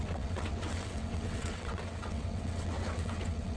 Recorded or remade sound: remade